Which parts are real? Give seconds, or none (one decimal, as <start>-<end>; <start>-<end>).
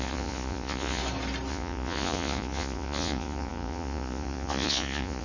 1.0-1.5